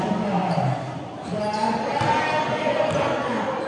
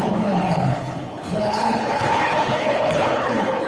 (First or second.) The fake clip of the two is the second